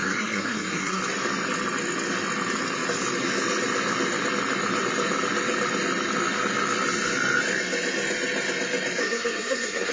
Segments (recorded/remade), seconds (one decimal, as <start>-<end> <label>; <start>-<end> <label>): 0.0-1.0 remade; 1.0-9.0 recorded; 9.0-9.9 remade

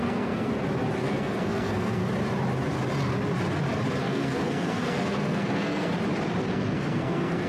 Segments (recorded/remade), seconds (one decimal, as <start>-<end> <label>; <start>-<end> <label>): 0.0-0.5 remade; 0.5-1.0 recorded; 1.0-2.0 remade; 2.0-4.0 recorded; 4.0-5.9 remade; 5.9-6.5 recorded; 6.5-7.5 remade